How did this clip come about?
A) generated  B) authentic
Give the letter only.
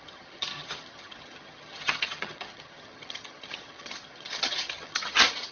A